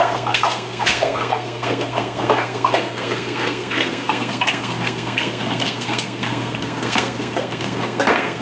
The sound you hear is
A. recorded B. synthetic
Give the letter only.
B